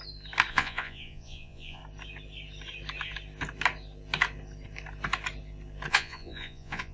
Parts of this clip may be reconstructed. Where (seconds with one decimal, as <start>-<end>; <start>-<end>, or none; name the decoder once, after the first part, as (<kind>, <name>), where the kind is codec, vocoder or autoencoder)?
0.5-1.8 (vocoder, Vocos); 5.9-6.9